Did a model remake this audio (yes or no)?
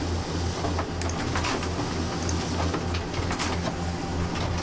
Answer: no